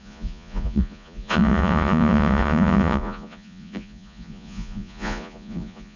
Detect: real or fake fake